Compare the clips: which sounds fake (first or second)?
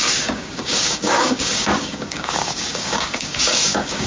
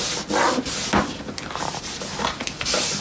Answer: first